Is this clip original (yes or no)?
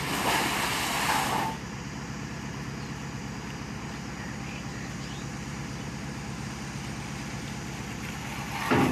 yes